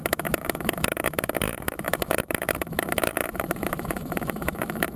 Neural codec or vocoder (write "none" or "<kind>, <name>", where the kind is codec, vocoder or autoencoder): autoencoder, DAC-VAE